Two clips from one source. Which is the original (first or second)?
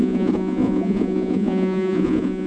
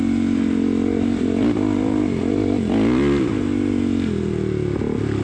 second